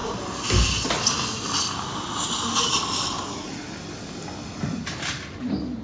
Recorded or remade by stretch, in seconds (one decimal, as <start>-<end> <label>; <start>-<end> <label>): 0.0-5.8 recorded